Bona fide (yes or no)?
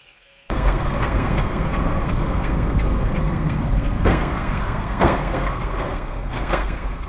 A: no